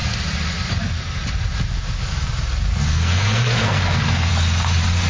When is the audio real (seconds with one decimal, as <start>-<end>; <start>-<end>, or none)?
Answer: 0.0-2.9; 4.3-5.1